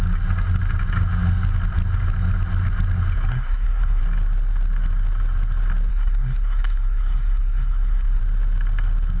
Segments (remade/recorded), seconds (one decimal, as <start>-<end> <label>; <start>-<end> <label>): 0.0-3.3 recorded; 3.3-4.0 remade; 4.0-5.9 recorded; 5.9-8.2 remade; 8.2-9.2 recorded